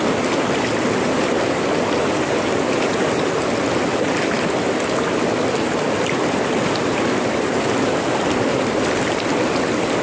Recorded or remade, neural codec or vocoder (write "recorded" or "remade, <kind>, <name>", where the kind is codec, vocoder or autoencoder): recorded